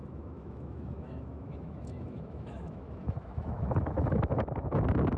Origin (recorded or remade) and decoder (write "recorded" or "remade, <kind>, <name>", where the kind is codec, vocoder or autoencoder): remade, autoencoder, DAC-VAE